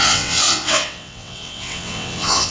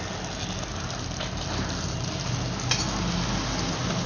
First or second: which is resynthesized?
first